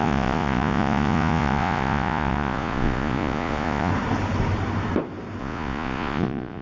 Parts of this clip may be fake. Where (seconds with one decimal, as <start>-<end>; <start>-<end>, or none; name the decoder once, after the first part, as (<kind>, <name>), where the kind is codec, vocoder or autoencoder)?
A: 0.0-3.9 (vocoder, Vocos); 5.4-6.6